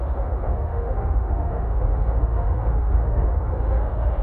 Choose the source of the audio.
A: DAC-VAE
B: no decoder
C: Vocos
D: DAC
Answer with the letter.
A